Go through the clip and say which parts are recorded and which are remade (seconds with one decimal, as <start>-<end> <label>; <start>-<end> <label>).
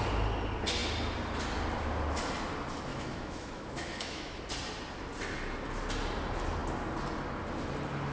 0.0-2.9 recorded; 2.9-4.4 remade; 4.4-8.1 recorded